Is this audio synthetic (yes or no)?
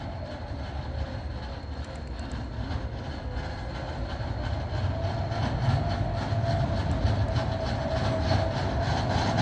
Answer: no